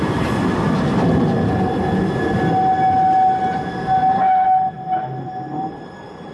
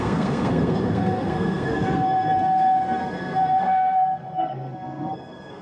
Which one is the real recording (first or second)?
first